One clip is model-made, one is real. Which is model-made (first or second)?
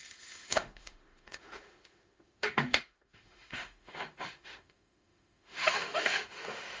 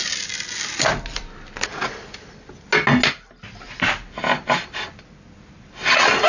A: first